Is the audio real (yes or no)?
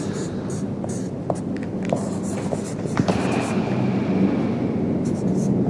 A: yes